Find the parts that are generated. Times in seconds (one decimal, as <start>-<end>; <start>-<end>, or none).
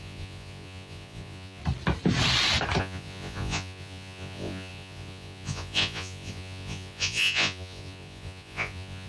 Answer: 0.0-1.6; 2.8-9.1